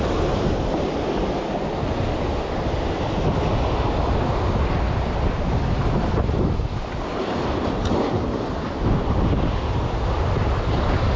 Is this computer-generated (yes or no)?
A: no